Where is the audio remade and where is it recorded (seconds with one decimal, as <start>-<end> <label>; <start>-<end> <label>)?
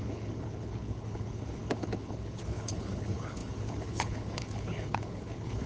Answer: 0.0-5.7 remade